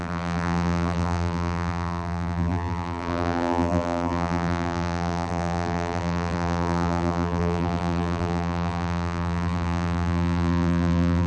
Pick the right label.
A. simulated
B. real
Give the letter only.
A